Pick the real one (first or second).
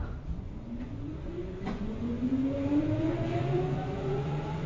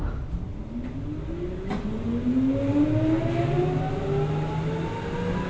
second